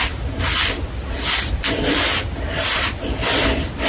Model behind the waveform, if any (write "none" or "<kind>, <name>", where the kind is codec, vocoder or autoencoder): none